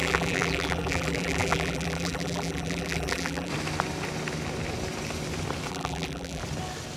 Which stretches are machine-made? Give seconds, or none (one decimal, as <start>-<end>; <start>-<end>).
0.0-3.5; 5.7-6.4